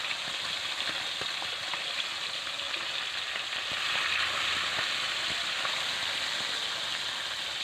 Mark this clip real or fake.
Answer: real